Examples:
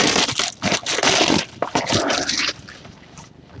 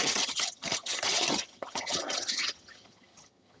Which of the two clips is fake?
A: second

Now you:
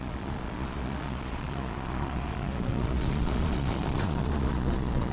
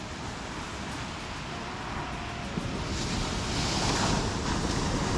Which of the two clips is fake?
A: first